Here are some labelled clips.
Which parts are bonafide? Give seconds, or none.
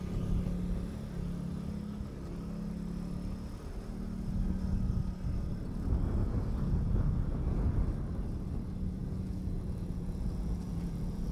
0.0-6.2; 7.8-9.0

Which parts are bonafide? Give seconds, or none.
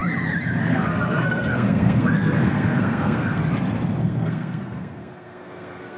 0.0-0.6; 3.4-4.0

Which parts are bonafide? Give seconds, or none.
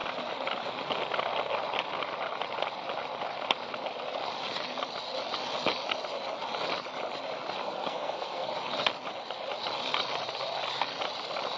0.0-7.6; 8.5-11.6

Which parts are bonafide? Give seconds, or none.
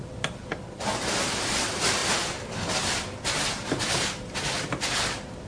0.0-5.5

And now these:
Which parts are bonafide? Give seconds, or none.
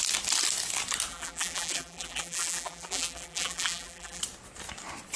0.0-1.1; 4.2-5.2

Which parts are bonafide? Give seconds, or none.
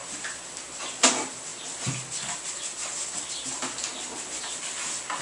0.0-5.2